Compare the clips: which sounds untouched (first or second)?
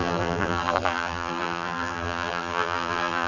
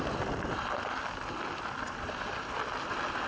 second